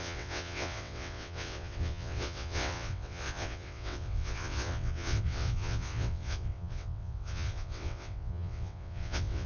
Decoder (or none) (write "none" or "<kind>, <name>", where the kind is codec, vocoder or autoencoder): vocoder, WaveNeXt